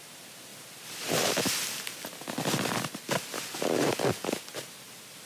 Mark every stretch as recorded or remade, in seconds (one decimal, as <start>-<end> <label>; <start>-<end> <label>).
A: 0.0-5.3 recorded